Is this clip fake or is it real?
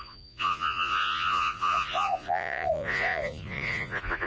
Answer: fake